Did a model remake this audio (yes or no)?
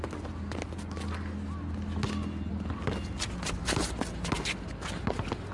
no